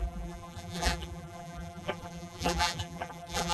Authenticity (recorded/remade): remade